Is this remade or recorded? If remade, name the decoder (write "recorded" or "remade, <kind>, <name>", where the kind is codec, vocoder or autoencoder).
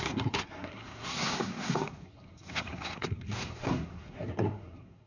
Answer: remade, codec, SNAC